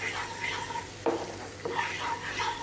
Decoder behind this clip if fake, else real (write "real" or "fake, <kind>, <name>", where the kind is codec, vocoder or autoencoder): real